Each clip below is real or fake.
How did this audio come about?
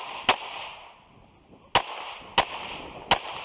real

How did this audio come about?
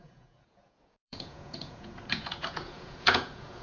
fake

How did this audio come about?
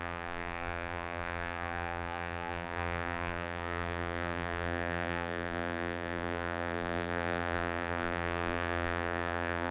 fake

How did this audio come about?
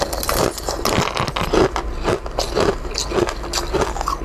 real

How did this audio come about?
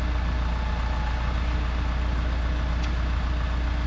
real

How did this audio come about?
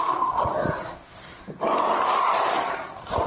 real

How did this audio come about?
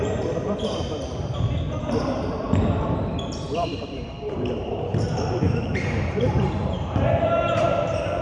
fake